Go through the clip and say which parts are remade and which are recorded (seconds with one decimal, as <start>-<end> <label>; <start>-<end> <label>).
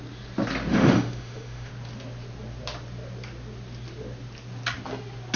0.0-0.7 recorded; 0.7-1.7 remade; 1.7-5.4 recorded